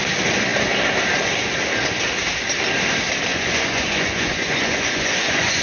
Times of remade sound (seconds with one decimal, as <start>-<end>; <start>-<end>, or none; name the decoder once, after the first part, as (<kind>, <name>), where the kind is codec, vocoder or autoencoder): 3.3-5.6 (vocoder, Vocos)